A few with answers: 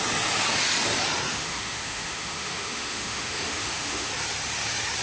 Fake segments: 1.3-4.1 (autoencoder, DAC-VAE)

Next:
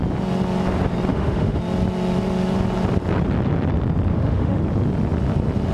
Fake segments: 1.1-1.6 (autoencoder, DAC-VAE); 4.1-4.6

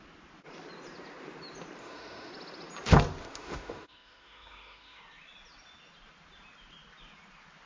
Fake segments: 1.8-2.3 (autoencoder, DAC-VAE); 3.2-5.0

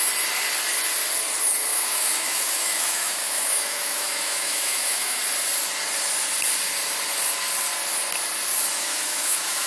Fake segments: 1.7-5.2 (autoencoder, DAC-VAE); 8.9-9.7

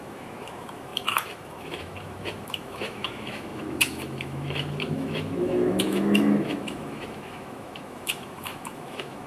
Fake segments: 0.0-9.3 (autoencoder, DAC-VAE)

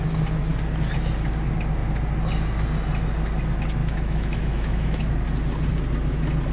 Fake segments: 3.8-5.1 (autoencoder, DAC-VAE)

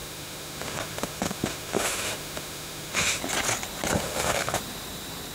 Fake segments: 0.0-3.2 (autoencoder, DAC-VAE); 3.9-4.6

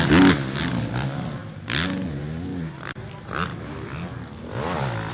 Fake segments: none